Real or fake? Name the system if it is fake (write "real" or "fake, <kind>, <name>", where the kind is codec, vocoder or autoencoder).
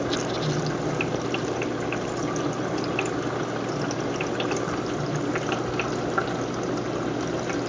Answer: real